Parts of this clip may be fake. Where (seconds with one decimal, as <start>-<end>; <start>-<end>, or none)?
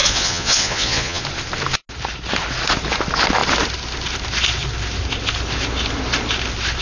0.0-1.2